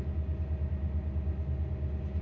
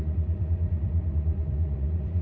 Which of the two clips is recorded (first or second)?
first